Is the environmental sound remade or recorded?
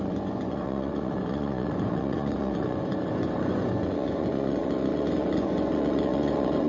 remade